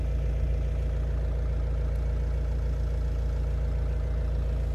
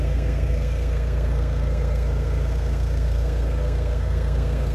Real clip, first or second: first